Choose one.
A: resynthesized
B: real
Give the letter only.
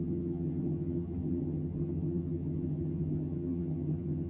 A